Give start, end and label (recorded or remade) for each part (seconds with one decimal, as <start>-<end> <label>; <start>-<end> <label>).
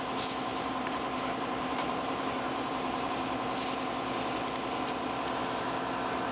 0.0-0.5 recorded; 0.5-3.1 remade; 3.1-6.3 recorded